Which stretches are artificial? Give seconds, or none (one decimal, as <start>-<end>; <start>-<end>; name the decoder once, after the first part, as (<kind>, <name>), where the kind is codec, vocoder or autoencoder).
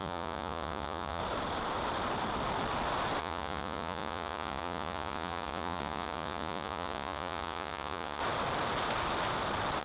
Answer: 0.0-1.2 (vocoder, Vocos); 3.2-8.2